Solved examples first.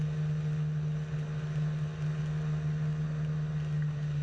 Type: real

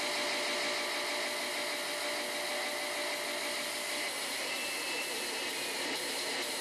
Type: real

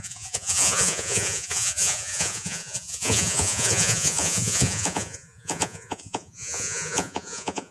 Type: fake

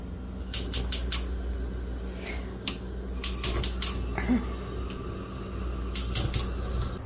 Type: real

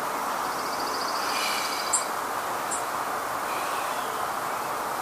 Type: real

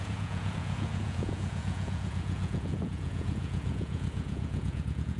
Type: fake